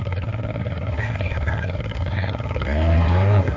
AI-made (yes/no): yes